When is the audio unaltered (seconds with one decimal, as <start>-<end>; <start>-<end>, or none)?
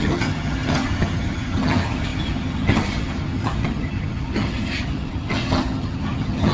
none